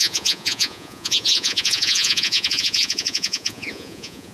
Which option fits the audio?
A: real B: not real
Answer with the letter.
B